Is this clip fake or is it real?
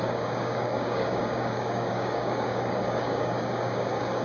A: fake